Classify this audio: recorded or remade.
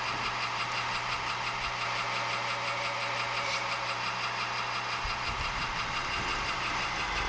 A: recorded